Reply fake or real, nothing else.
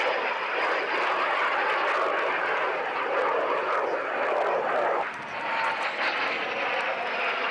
real